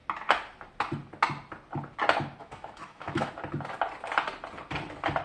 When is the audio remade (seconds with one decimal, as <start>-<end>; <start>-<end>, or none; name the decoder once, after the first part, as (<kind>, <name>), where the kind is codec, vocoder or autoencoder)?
2.4-3.3 (autoencoder, DAC-VAE)